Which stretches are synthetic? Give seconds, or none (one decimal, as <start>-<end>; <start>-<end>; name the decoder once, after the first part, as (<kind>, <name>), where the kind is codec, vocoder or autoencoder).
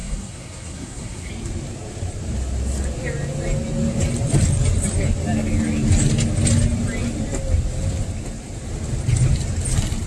0.0-1.3 (codec, SNAC)